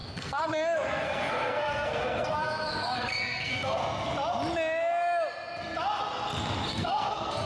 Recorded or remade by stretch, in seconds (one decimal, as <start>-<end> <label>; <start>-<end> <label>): 0.0-3.8 remade; 3.8-6.7 recorded; 6.7-7.5 remade

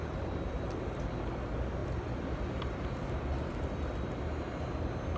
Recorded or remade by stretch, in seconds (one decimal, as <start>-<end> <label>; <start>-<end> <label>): 0.0-5.2 recorded